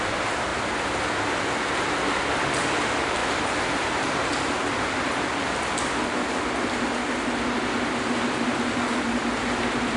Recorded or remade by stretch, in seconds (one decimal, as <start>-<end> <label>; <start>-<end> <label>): 0.0-10.0 recorded